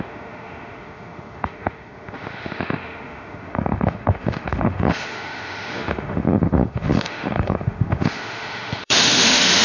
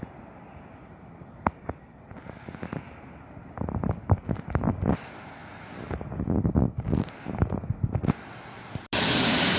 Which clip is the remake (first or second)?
first